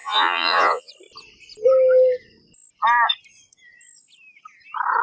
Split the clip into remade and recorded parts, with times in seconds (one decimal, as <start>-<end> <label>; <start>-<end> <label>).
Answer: 0.0-0.9 remade; 0.9-5.0 recorded